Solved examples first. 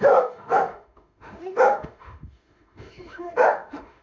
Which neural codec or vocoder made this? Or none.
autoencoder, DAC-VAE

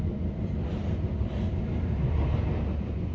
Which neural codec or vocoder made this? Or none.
none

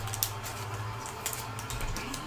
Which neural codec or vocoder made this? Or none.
none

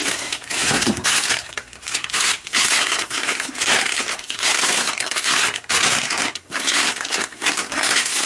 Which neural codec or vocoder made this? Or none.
codec, SNAC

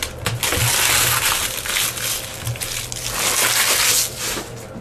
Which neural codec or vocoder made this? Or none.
none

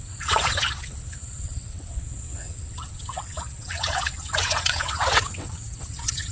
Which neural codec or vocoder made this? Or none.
vocoder, WaveNeXt